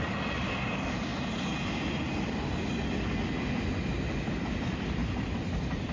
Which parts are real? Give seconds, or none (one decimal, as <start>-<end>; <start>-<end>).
1.1-4.6